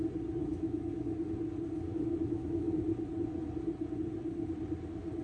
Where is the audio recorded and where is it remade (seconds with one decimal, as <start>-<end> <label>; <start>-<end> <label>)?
0.0-0.4 recorded; 0.4-0.9 remade; 0.9-1.9 recorded; 1.9-2.7 remade; 2.7-5.2 recorded